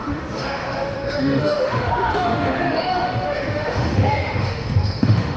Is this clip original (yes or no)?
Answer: no